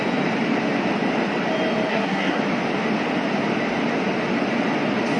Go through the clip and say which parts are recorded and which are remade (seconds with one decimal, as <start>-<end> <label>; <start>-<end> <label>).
0.0-1.9 recorded; 1.9-2.4 remade; 2.4-5.2 recorded